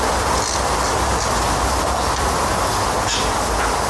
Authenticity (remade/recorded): recorded